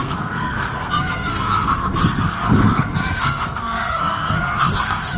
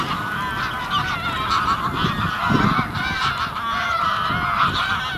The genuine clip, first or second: second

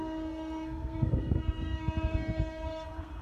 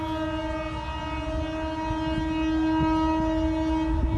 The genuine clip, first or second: second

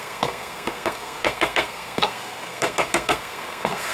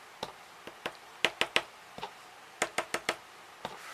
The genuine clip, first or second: second